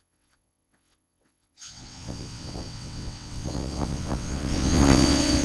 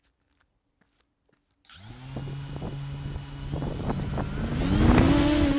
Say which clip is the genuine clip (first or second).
second